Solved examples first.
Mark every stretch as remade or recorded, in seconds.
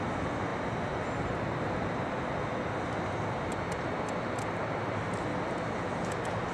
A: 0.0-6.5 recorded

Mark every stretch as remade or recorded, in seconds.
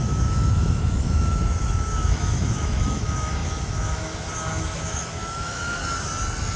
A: 0.0-5.8 remade; 5.8-6.6 recorded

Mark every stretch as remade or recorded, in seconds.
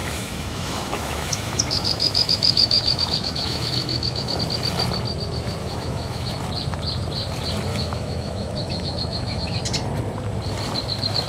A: 0.0-4.4 remade; 4.4-5.6 recorded; 5.6-6.3 remade; 6.3-7.7 recorded; 7.7-9.6 remade; 9.6-11.3 recorded